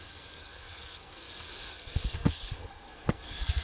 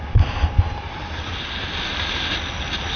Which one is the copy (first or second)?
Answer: first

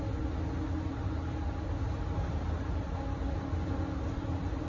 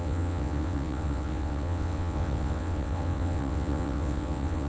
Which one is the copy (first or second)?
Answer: second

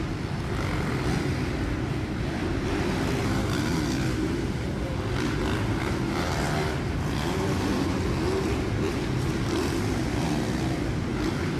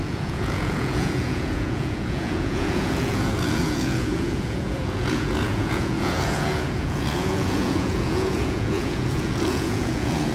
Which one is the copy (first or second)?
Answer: second